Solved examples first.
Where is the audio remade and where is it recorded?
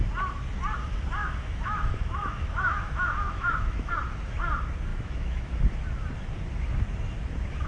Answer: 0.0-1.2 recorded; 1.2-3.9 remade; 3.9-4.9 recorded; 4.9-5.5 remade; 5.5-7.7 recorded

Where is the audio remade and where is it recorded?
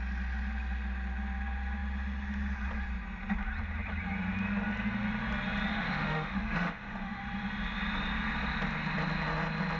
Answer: 0.0-5.7 recorded; 5.7-7.2 remade; 7.2-9.8 recorded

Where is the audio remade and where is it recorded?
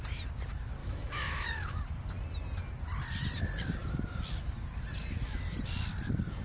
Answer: 0.0-0.8 recorded; 0.8-1.8 remade; 1.8-6.4 recorded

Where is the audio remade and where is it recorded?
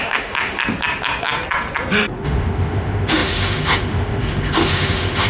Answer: 0.0-0.6 remade; 0.6-2.2 recorded; 2.2-5.3 remade